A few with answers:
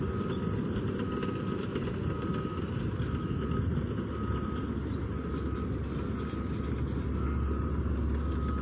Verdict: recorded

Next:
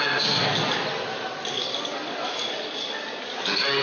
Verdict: recorded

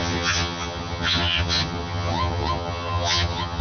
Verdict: remade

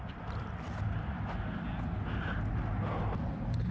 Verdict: recorded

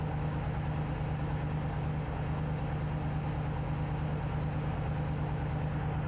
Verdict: recorded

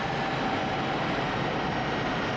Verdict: recorded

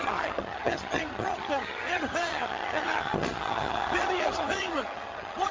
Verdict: remade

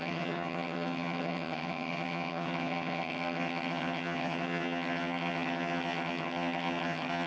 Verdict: remade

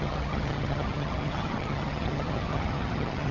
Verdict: remade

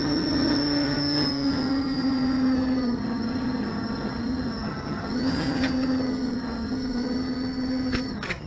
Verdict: remade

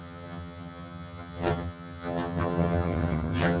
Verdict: remade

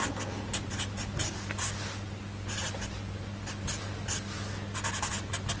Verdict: recorded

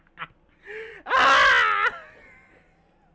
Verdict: recorded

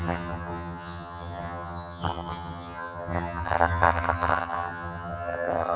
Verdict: remade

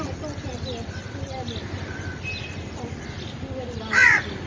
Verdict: recorded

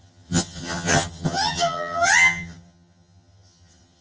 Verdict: remade